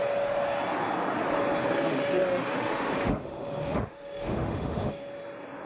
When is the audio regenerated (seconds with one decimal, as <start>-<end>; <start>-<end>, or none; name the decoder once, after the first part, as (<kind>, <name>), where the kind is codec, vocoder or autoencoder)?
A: 1.6-5.0 (autoencoder, DAC-VAE)